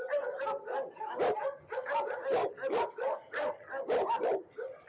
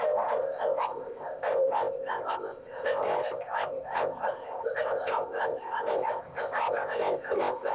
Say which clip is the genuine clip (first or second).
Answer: first